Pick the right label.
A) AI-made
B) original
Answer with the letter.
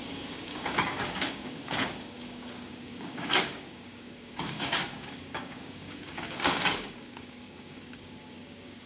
A